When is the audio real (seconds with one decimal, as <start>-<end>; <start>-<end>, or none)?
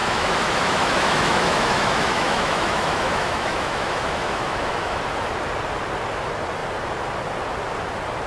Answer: 5.0-8.3